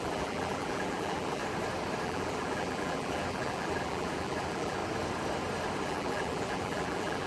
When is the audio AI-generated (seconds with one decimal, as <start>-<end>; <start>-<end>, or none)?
0.0-1.4; 2.0-4.8; 5.8-7.3